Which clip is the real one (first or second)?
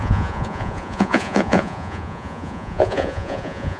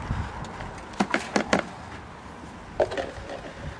second